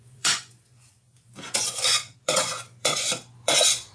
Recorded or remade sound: remade